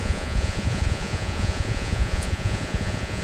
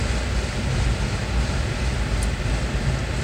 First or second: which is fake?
first